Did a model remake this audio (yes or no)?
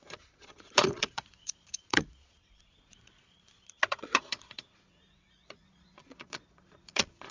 yes